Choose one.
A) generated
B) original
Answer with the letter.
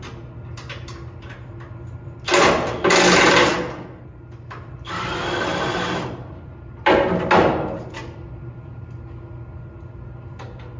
B